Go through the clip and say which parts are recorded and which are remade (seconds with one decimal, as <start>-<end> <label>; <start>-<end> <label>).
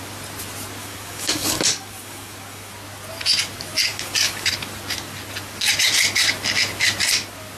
0.0-0.8 recorded; 0.8-2.7 remade; 2.7-3.9 recorded; 3.9-4.5 remade; 4.5-7.6 recorded